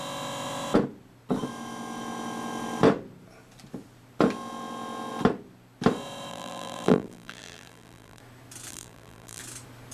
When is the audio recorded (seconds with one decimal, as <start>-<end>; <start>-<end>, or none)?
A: 0.0-6.3; 8.2-8.7; 9.4-9.9